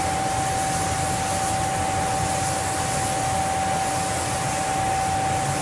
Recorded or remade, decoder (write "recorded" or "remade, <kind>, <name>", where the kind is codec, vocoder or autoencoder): recorded